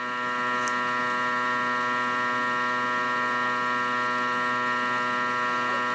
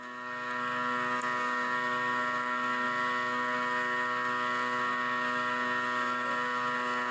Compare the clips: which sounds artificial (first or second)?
second